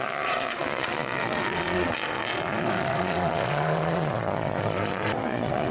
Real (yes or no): no